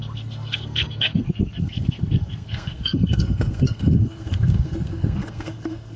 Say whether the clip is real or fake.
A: fake